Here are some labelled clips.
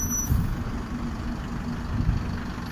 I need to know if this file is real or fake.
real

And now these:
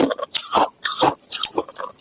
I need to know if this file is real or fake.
fake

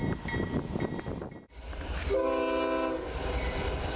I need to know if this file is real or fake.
real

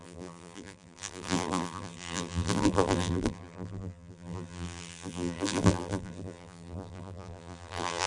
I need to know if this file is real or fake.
fake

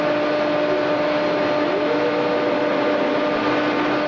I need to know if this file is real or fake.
real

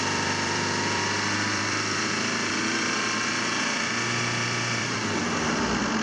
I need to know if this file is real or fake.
fake